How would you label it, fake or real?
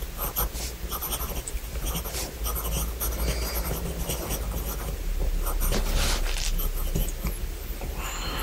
real